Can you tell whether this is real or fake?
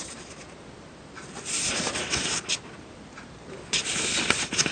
fake